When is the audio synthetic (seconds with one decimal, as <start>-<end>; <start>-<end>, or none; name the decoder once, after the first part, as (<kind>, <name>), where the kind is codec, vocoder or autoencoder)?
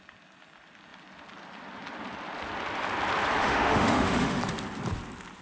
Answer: 3.4-4.4 (autoencoder, DAC-VAE)